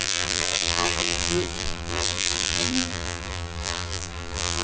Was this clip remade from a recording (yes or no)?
yes